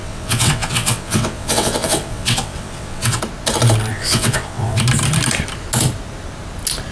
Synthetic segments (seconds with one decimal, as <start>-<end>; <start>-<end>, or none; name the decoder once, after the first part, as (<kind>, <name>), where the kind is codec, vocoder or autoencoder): 0.0-3.2 (vocoder, WaveNeXt); 3.9-4.8